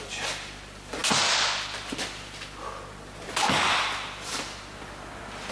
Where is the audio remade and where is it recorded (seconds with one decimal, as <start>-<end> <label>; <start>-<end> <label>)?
0.0-5.5 recorded